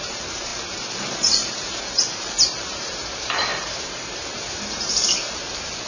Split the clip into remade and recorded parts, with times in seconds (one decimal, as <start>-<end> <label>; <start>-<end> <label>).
0.0-5.9 remade